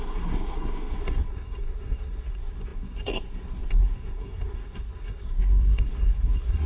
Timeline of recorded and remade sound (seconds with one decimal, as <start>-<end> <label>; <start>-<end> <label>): 0.0-6.7 remade